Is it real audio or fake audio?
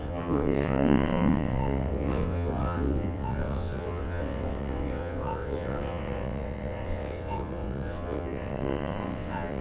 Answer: fake